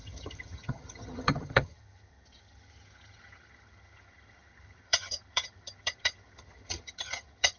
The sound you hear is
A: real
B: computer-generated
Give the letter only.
B